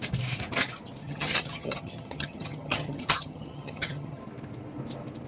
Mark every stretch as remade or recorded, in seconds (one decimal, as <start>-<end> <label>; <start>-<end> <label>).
0.0-1.0 recorded; 1.0-4.2 remade; 4.2-5.3 recorded